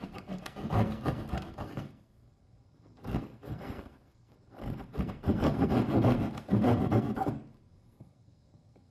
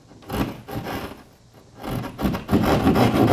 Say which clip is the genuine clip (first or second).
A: second